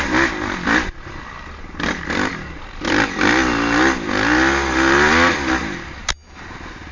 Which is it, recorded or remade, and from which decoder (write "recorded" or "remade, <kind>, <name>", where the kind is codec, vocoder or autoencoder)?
recorded